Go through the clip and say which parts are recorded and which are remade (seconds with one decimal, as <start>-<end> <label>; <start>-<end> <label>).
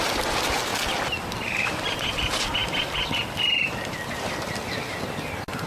0.0-5.7 recorded